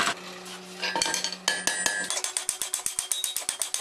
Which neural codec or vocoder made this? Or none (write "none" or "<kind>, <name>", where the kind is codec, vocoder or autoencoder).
none